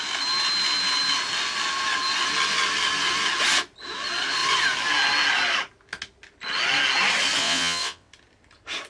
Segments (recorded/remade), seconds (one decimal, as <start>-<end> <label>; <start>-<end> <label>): 0.0-7.4 recorded; 7.4-8.1 remade; 8.1-8.9 recorded